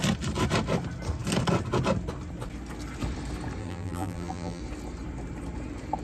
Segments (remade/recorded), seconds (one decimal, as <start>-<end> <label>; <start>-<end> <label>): 0.0-3.6 recorded; 3.6-4.6 remade; 4.6-6.0 recorded

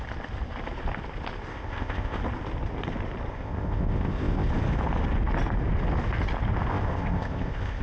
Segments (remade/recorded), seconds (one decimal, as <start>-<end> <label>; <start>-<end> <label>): 0.0-1.5 recorded; 1.5-2.2 remade; 2.2-3.3 recorded; 3.3-4.5 remade; 4.5-6.7 recorded; 6.7-7.8 remade

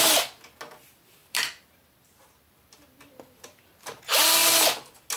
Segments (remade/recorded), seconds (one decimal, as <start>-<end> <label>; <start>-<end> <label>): 0.0-1.2 recorded; 1.2-2.9 remade; 2.9-5.2 recorded

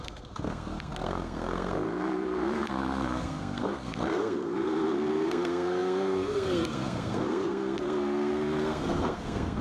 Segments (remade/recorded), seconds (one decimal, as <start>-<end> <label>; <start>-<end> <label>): 0.0-9.6 remade

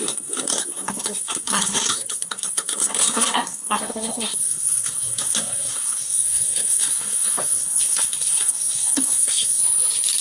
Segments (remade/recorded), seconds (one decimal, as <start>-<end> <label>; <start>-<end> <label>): 0.0-9.6 remade; 9.6-10.2 recorded